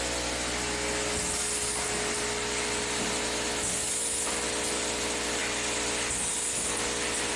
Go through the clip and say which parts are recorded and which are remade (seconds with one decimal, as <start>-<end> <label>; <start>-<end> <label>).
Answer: 0.0-7.4 recorded